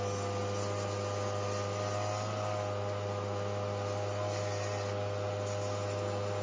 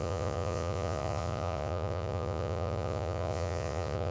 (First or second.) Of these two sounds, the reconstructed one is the second